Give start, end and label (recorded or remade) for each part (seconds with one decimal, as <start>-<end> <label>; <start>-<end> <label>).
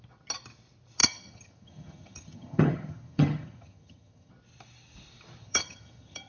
0.0-1.0 recorded; 1.0-4.3 remade; 4.3-5.4 recorded; 5.4-6.3 remade